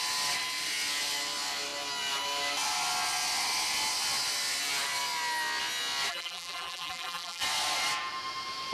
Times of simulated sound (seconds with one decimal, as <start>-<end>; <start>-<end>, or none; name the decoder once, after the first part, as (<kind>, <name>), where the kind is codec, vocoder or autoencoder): 6.1-7.4 (vocoder, BigVGAN v2)